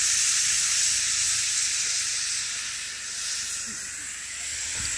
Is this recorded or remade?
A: recorded